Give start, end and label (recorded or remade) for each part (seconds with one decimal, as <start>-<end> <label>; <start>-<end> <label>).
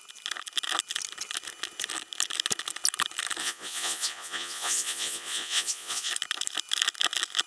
0.0-3.4 recorded; 3.4-6.1 remade; 6.1-7.5 recorded